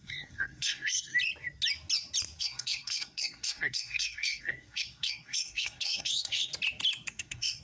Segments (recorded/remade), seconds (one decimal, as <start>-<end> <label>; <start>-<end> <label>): 0.0-1.1 remade; 1.1-2.4 recorded; 2.4-6.5 remade; 6.5-7.1 recorded; 7.1-7.6 remade